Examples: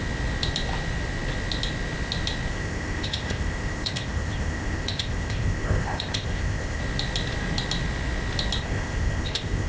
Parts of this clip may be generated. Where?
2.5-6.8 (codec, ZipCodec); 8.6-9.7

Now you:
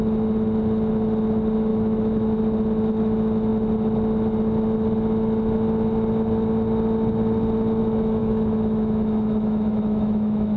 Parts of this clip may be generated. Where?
1.7-2.4 (autoencoder, DAC-VAE); 8.2-10.6

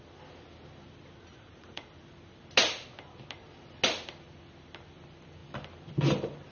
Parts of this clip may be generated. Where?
1.3-1.9 (vocoder, Vocos)

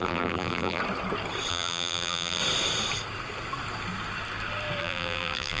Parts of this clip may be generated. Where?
0.0-0.8 (vocoder, BigVGAN v2); 1.5-2.4; 4.8-5.6

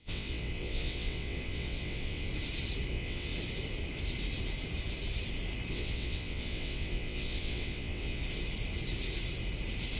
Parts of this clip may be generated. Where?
0.0-2.3 (vocoder, WaveNeXt); 2.9-3.3; 5.7-8.2

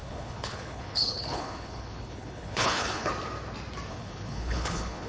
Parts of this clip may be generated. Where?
0.0-3.1 (codec, HILCodec); 3.9-5.1